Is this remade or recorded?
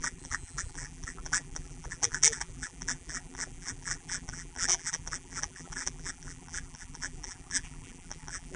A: remade